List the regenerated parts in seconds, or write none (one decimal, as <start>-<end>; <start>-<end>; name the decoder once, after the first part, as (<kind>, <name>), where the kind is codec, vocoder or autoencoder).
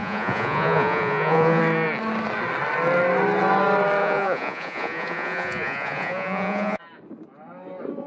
0.0-1.6 (vocoder, Vocos); 4.0-6.8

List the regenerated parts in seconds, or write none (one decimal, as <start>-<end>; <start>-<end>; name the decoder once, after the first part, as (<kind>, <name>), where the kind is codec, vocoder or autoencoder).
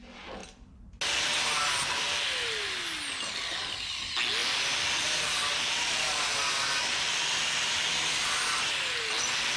none